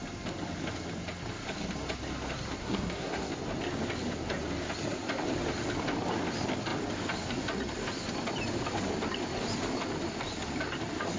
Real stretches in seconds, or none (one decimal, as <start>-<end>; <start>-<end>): 0.0-2.6; 3.3-11.2

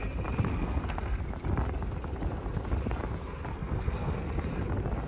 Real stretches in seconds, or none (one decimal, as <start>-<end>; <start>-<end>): 0.0-0.5; 1.2-3.5; 4.2-5.1

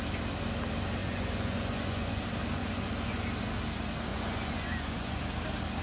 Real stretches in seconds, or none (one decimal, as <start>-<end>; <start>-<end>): 0.0-1.0; 2.2-2.6; 3.2-4.1; 5.2-5.8